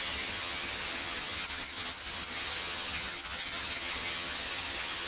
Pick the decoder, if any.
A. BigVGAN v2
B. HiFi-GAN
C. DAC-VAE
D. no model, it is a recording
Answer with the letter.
B